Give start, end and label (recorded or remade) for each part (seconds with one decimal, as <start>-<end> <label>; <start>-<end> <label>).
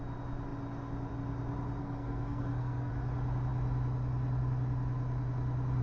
0.0-1.8 recorded; 1.8-2.9 remade; 2.9-5.8 recorded